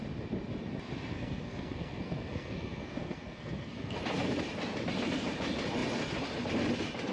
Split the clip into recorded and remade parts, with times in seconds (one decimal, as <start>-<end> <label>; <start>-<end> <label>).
0.0-1.1 recorded; 1.1-4.0 remade; 4.0-7.1 recorded